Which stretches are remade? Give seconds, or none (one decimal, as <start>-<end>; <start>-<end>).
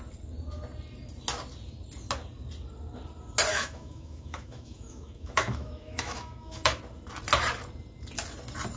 3.5-6.8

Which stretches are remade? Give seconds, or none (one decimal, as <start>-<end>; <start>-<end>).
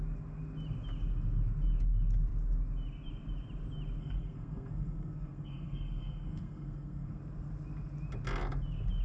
4.0-7.2